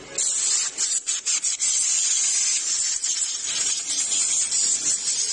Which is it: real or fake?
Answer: real